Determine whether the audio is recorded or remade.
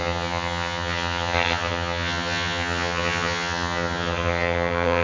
remade